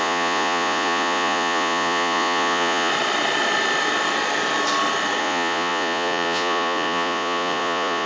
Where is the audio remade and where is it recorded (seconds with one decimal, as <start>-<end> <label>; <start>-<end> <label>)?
0.0-2.9 remade; 2.9-5.2 recorded; 5.2-8.1 remade